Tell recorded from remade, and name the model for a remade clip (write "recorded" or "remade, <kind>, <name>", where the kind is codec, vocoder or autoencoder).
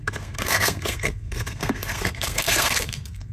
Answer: remade, codec, SNAC